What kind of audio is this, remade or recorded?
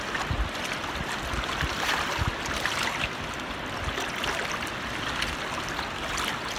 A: recorded